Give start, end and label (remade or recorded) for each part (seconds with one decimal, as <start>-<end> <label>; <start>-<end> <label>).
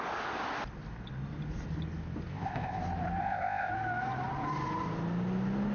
0.0-2.3 recorded; 2.3-2.8 remade; 2.8-3.2 recorded; 3.2-3.7 remade; 3.7-5.7 recorded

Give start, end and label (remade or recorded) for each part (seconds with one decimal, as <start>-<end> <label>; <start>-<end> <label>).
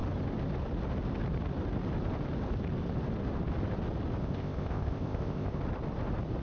0.0-4.2 recorded; 4.2-5.6 remade; 5.6-6.4 recorded